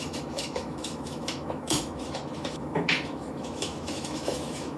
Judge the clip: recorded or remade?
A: remade